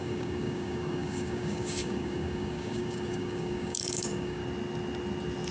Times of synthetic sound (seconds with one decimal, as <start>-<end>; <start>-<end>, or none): 0.0-4.4